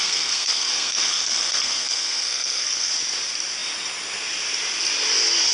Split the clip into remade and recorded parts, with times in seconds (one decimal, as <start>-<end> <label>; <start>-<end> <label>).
0.0-2.9 remade; 2.9-5.5 recorded